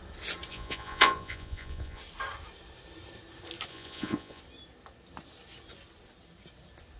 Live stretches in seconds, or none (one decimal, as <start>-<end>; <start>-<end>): 0.0-0.5; 2.0-3.7; 4.4-7.0